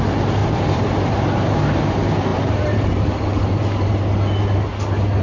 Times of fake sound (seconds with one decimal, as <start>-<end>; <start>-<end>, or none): 0.4-1.8; 2.3-3.9